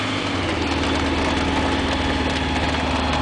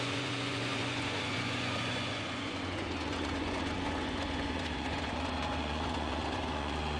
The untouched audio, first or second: first